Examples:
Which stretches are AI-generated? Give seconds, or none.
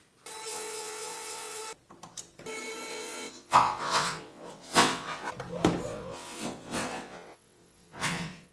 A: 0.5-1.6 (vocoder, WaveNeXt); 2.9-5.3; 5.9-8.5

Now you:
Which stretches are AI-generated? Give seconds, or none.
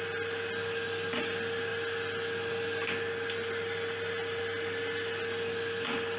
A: none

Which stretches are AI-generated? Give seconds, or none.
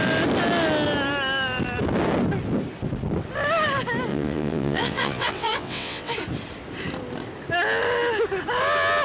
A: 4.1-6.1 (vocoder, WaveNeXt)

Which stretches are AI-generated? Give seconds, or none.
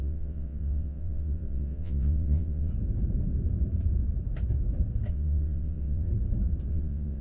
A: 0.0-2.7 (vocoder, WaveNeXt); 5.1-6.1; 6.7-7.2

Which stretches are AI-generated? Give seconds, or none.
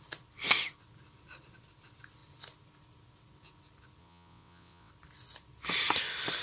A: 4.0-4.9 (vocoder, WaveNeXt)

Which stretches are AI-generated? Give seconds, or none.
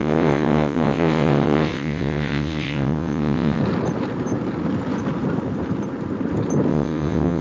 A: 0.0-3.6 (vocoder, WaveNeXt); 6.7-7.4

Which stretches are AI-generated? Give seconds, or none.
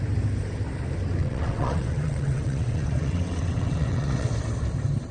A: 1.2-4.3 (vocoder, WaveNeXt)